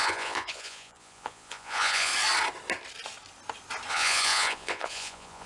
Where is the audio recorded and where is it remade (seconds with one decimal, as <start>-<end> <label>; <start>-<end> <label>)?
0.0-2.1 remade; 2.1-3.9 recorded; 3.9-5.5 remade